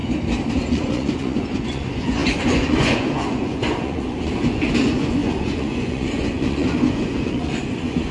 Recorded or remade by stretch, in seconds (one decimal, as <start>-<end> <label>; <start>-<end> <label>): 0.0-0.7 recorded; 0.7-8.1 remade